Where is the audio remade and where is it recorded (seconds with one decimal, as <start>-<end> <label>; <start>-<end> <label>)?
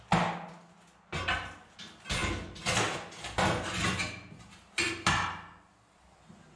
0.0-6.6 recorded